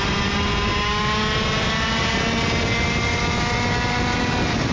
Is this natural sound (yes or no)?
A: yes